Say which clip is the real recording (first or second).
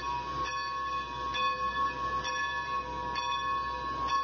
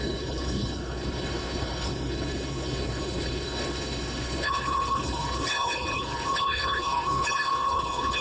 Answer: first